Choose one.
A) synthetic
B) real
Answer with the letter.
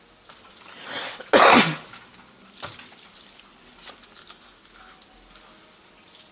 B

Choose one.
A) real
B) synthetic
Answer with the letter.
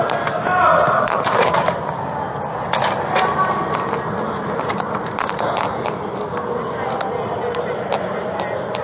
A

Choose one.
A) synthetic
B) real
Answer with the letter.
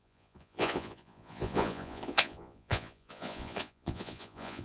A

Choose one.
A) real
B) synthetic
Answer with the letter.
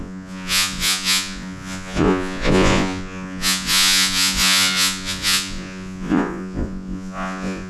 B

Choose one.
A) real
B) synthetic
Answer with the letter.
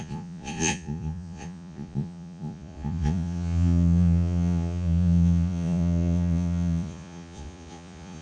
B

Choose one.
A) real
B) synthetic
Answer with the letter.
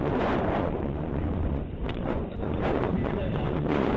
B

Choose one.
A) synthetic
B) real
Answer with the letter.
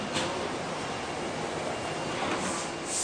B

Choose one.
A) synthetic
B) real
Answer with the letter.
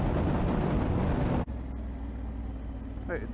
B